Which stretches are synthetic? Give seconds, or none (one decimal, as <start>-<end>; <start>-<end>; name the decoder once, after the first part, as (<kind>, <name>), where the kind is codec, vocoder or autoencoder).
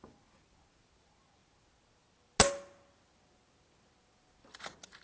none